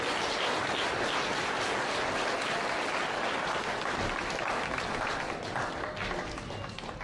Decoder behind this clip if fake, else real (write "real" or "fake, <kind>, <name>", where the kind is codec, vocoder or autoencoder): real